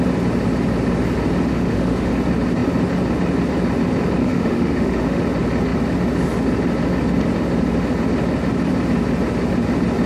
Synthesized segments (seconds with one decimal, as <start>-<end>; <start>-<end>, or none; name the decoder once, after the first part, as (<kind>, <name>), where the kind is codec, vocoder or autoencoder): 1.5-2.1 (autoencoder, DAC-VAE); 4.2-5.2

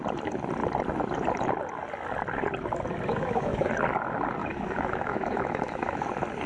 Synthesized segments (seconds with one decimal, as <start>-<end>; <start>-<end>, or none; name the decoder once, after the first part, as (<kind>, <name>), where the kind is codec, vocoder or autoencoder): 3.1-3.7 (autoencoder, DAC-VAE); 4.4-6.1

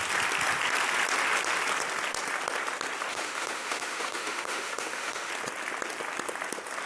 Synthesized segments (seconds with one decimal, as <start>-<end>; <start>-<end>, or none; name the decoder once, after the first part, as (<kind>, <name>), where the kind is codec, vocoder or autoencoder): 3.1-5.3 (autoencoder, DAC-VAE)

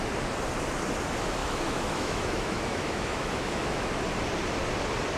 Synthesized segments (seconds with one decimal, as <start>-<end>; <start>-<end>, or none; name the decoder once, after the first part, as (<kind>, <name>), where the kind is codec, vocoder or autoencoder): 1.4-3.9 (autoencoder, DAC-VAE)

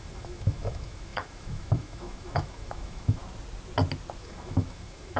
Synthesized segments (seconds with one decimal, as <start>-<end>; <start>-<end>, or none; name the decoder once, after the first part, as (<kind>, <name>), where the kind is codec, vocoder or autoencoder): 0.0-3.2 (autoencoder, DAC-VAE); 4.2-5.2

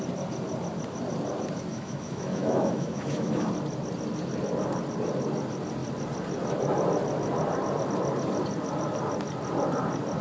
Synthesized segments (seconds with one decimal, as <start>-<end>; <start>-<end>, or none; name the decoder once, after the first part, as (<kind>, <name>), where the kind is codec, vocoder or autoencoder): 1.7-3.5 (autoencoder, DAC-VAE)

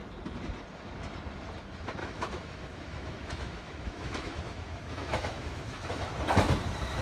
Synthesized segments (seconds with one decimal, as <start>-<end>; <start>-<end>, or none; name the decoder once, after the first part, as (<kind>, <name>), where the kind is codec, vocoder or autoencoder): 2.0-6.1 (autoencoder, DAC-VAE)